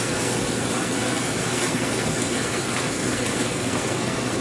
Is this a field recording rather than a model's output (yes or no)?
no